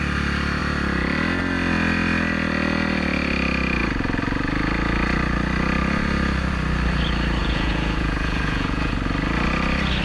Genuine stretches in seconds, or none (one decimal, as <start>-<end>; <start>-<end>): 0.0-7.4; 8.9-10.0